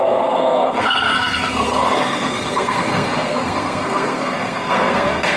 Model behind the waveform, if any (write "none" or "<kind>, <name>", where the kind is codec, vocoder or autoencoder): codec, SNAC